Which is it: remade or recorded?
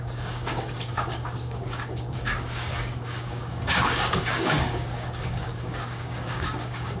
remade